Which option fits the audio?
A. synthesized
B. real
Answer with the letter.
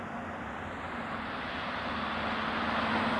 B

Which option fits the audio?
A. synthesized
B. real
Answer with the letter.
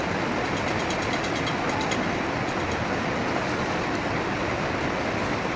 B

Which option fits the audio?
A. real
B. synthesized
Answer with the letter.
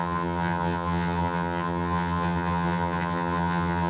B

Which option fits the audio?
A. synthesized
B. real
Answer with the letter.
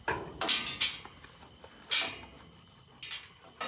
B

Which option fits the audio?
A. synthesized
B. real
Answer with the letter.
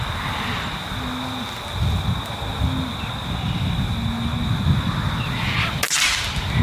B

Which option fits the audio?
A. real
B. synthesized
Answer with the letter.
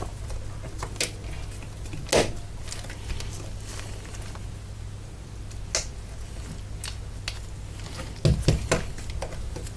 A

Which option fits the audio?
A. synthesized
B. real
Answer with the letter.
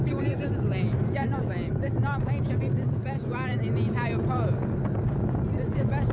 B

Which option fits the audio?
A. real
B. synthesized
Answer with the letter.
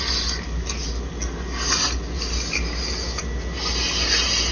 A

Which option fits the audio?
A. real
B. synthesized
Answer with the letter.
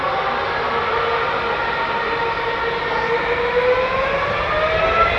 A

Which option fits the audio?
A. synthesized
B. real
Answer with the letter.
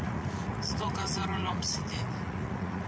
A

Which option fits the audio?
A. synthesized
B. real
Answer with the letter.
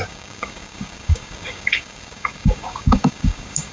A